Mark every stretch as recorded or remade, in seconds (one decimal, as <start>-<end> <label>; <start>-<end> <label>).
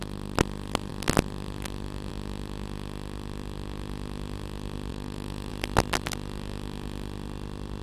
0.0-4.9 recorded; 4.9-5.5 remade; 5.5-7.8 recorded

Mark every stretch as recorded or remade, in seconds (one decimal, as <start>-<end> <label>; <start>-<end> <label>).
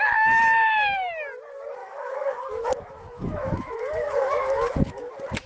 0.0-1.8 recorded; 1.8-5.1 remade; 5.1-5.5 recorded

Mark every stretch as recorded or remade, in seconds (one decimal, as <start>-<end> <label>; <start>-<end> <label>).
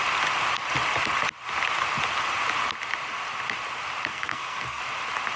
0.0-4.1 recorded; 4.1-4.8 remade; 4.8-5.4 recorded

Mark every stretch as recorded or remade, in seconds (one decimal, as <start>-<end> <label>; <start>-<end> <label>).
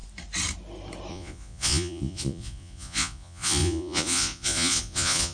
0.0-1.1 recorded; 1.1-5.3 remade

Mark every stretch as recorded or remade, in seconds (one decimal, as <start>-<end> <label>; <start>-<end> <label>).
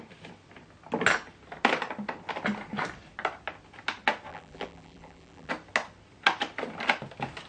0.0-4.3 recorded; 4.3-5.5 remade; 5.5-7.5 recorded